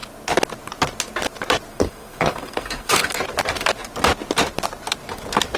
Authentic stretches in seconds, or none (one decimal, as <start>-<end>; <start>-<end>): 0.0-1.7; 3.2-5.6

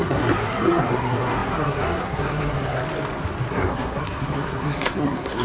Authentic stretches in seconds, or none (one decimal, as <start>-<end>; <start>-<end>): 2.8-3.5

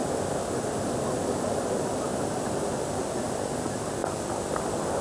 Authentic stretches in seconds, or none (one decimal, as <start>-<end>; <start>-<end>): 0.0-5.0